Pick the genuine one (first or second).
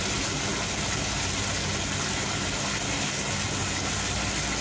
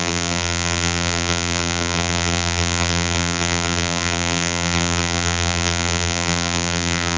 first